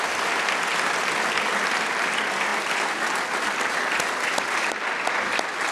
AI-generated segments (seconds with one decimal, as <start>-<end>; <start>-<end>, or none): none